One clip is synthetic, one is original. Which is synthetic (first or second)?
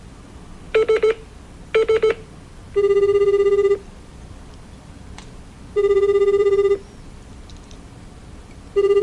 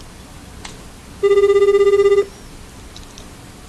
first